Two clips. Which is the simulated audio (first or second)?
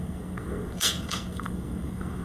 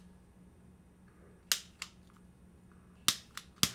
first